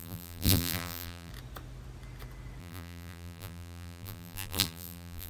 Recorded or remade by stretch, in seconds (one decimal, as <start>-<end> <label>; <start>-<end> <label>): 0.0-1.3 remade; 1.3-2.6 recorded; 2.6-5.3 remade